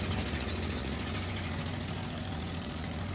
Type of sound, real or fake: fake